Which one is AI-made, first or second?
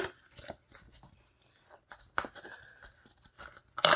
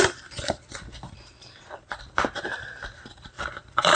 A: second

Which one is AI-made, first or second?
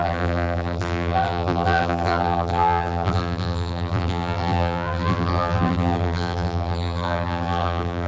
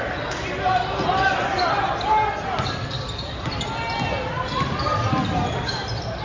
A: first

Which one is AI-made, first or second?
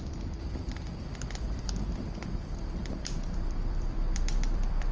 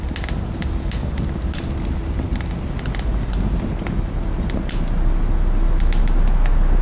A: first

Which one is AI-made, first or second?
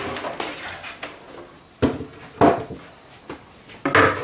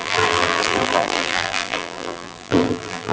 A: second